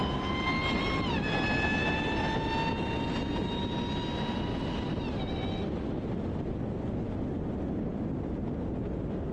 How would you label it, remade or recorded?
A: recorded